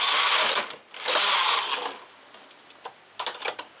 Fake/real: real